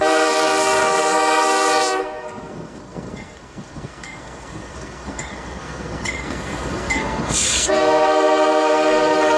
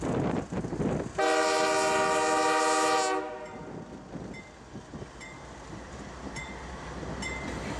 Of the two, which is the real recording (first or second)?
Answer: second